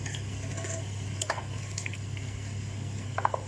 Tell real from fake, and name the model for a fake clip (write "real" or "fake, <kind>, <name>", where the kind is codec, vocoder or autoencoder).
fake, codec, SNAC